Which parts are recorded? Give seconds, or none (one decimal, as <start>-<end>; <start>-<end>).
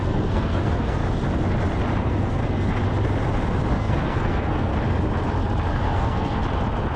1.0-2.0; 2.4-3.7; 4.7-5.7; 6.4-7.0